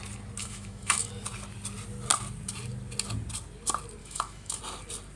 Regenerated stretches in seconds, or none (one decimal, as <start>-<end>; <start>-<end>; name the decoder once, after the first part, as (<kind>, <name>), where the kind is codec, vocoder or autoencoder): 0.4-1.1 (autoencoder, DAC-VAE); 4.0-4.6